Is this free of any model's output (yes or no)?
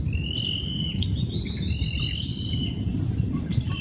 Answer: yes